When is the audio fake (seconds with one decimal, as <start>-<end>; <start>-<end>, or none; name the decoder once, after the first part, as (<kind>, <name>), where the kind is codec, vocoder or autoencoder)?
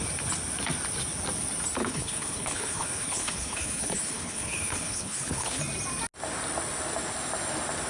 1.8-5.6 (codec, HILCodec)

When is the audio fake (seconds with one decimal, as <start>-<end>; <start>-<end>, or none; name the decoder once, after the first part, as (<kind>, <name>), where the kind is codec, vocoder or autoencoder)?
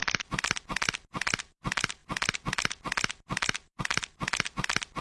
none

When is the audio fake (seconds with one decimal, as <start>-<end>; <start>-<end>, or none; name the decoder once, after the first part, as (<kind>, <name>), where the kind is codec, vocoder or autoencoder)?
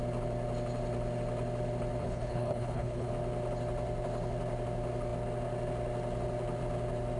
2.0-3.1 (codec, HILCodec)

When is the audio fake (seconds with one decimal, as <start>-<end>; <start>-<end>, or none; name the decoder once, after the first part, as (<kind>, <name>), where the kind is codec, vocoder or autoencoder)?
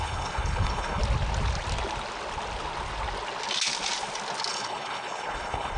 0.0-1.0 (codec, HILCodec); 4.5-5.8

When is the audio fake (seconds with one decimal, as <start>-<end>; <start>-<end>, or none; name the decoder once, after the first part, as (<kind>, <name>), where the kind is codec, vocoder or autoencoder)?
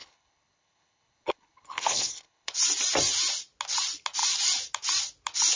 0.0-2.5 (codec, HILCodec)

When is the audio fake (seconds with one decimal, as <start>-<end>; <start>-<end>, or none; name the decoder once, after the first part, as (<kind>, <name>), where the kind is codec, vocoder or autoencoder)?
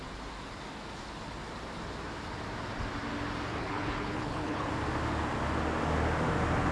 3.5-4.7 (codec, HILCodec)